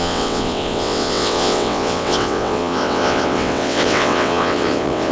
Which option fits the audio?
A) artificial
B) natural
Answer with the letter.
A